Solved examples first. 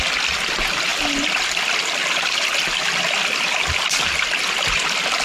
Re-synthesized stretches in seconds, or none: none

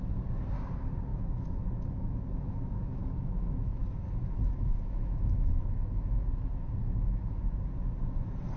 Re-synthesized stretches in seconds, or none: 1.1-6.3 (autoencoder, DAC-VAE); 6.8-7.4

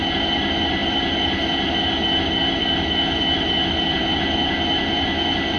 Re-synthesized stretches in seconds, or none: none

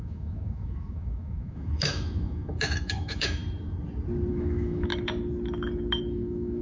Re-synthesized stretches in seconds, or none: 0.0-3.4 (autoencoder, DAC-VAE); 4.3-4.9; 6.0-6.6

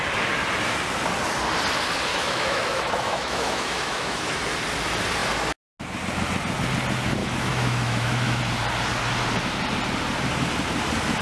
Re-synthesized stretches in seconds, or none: 2.1-4.4 (autoencoder, DAC-VAE); 7.2-8.4

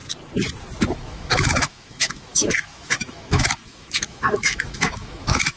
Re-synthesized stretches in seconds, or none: 0.9-5.6 (autoencoder, DAC-VAE)

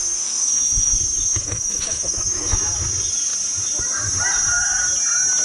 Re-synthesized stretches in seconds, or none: 0.0-2.6 (autoencoder, DAC-VAE)

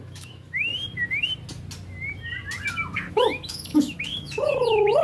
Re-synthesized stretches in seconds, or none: 0.0-0.7 (autoencoder, DAC-VAE); 3.1-5.0